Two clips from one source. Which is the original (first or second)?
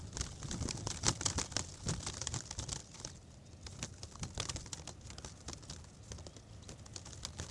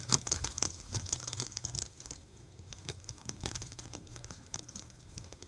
first